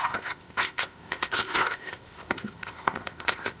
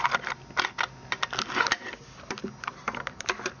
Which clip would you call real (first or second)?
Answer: second